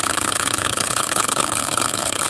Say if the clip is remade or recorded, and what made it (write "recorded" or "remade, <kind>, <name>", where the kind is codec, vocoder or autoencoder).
remade, codec, HILCodec